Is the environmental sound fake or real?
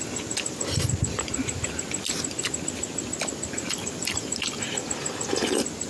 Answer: real